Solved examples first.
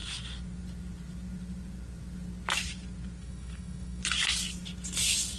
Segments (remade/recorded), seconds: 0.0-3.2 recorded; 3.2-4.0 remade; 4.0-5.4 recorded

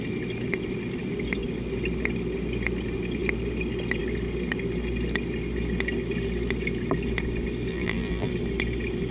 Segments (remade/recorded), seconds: 0.0-7.7 recorded; 7.7-8.3 remade; 8.3-9.1 recorded

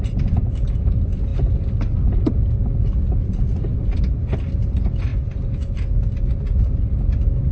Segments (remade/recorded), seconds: 0.0-7.5 recorded

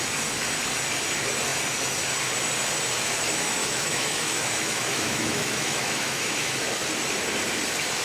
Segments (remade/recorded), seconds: 0.0-3.6 recorded; 3.6-6.5 remade; 6.5-8.0 recorded